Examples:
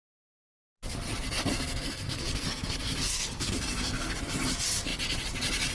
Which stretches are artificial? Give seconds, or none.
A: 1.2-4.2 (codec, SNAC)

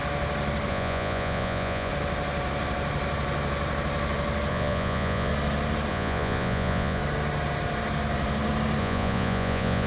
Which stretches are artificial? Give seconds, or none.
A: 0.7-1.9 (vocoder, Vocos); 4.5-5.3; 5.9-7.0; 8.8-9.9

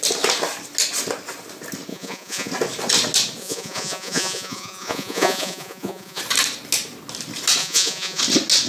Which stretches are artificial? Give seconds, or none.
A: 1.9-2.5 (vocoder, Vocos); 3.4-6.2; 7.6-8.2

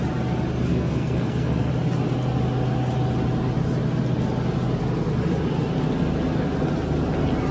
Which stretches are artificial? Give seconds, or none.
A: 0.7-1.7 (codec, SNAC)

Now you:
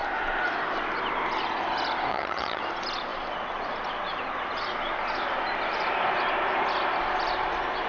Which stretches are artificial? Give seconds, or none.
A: 2.1-2.6 (vocoder, HiFi-GAN)

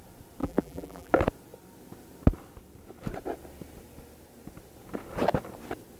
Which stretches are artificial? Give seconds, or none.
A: 0.4-1.1 (vocoder, BigVGAN v2)

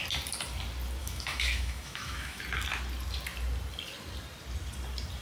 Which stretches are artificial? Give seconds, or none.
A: 1.0-2.4 (autoencoder, DAC-VAE)

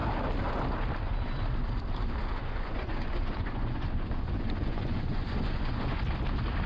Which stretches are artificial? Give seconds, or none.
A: 2.4-6.0 (vocoder, Vocos)